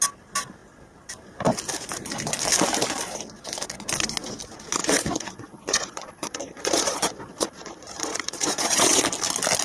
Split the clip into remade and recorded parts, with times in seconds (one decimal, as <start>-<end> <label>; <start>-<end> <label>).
0.0-4.8 recorded; 4.8-9.0 remade; 9.0-9.6 recorded